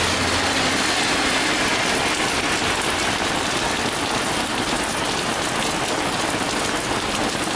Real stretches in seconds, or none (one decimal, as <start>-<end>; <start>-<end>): 0.0-4.5; 5.2-7.6